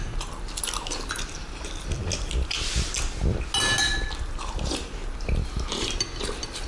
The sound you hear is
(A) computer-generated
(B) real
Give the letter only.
B